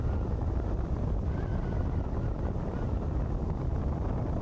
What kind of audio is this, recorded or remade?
recorded